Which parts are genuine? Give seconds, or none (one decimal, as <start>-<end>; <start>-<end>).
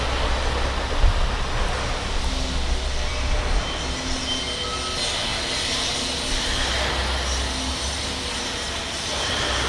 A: 0.0-9.7